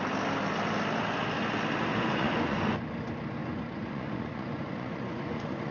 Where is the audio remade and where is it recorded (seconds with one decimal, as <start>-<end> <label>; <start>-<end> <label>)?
0.0-1.9 recorded; 1.9-2.6 remade; 2.6-3.4 recorded; 3.4-5.7 remade